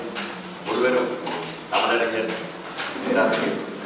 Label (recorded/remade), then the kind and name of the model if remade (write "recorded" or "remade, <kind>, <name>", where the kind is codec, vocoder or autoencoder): recorded